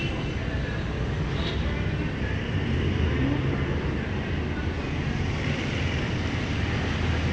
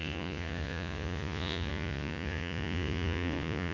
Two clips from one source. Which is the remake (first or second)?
second